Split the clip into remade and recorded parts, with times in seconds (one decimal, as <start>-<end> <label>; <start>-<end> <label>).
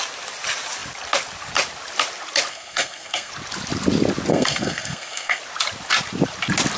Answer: 0.0-2.5 recorded; 2.5-3.3 remade; 3.3-4.3 recorded; 4.3-5.4 remade; 5.4-6.8 recorded